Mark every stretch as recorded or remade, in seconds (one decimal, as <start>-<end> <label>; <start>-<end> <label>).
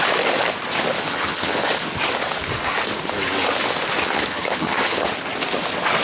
0.0-1.0 recorded; 1.0-1.7 remade; 1.7-4.0 recorded; 4.0-5.1 remade; 5.1-6.0 recorded